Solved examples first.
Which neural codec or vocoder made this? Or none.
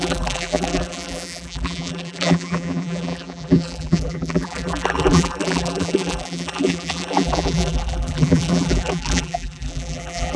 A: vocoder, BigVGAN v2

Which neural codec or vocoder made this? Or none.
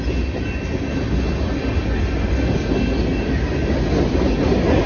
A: none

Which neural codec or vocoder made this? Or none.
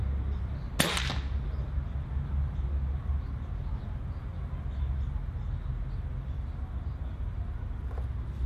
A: none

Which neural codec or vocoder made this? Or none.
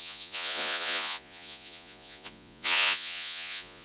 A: vocoder, Vocos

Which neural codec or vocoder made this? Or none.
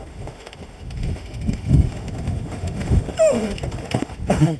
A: autoencoder, DAC-VAE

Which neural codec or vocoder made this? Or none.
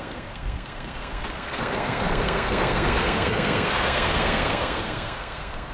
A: codec, SNAC